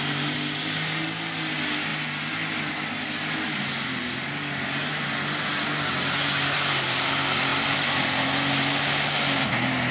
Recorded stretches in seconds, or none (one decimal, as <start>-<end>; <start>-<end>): 0.0-9.9